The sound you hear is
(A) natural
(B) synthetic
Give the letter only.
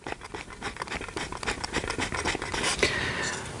A